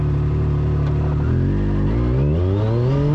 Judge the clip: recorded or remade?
recorded